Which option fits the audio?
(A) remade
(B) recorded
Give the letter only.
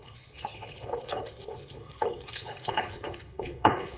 A